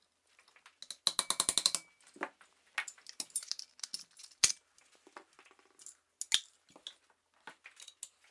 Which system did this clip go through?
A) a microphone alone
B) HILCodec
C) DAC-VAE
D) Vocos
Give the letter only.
A